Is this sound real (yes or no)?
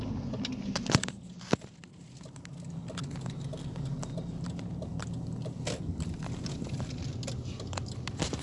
yes